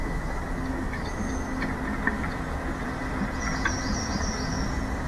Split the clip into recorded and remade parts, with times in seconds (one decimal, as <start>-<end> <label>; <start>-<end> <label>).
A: 0.0-1.3 remade; 1.3-5.1 recorded